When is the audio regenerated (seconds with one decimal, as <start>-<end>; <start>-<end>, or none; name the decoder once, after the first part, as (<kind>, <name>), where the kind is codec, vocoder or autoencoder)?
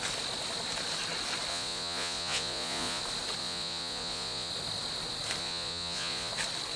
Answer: 1.5-3.0 (vocoder, Vocos); 3.4-4.5; 5.4-6.3